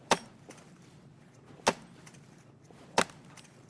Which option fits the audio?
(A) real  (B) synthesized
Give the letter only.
A